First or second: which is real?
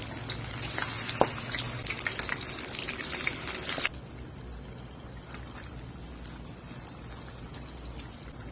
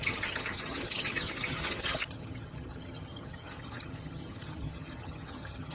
first